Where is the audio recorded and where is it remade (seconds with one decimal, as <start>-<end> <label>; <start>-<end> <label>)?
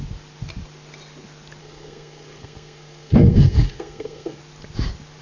0.0-1.6 recorded; 1.6-4.4 remade; 4.4-5.2 recorded